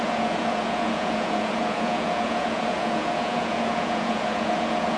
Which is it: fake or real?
fake